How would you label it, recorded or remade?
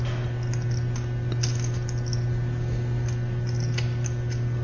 recorded